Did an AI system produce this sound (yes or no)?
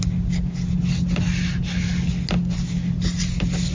no